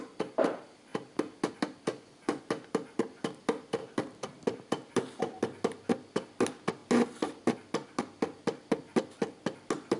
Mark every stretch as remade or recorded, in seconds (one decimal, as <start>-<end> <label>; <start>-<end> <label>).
0.0-1.9 recorded; 1.9-2.5 remade; 2.5-10.0 recorded